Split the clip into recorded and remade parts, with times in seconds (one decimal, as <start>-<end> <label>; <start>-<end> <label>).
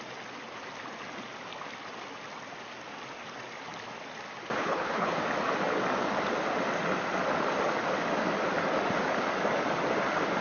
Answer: 0.0-4.6 recorded; 4.6-5.1 remade; 5.1-10.4 recorded